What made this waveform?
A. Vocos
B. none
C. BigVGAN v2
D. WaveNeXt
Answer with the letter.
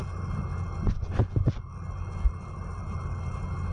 B